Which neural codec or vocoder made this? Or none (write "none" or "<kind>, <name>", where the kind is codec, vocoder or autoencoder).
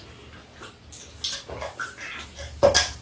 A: none